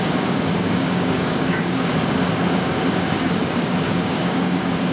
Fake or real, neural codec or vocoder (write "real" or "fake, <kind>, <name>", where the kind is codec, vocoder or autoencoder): fake, codec, DAC